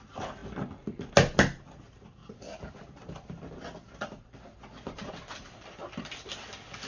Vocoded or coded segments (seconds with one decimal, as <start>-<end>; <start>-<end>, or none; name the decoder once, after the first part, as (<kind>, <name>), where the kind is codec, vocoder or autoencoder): none